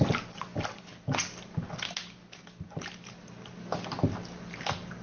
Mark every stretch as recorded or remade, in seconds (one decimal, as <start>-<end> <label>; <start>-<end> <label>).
0.0-5.0 recorded